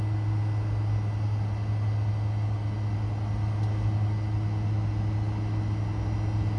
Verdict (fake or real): real